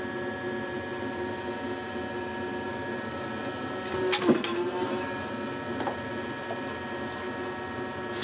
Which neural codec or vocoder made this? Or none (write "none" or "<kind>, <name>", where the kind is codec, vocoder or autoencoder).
none